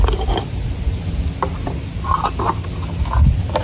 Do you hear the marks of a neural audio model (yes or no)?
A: no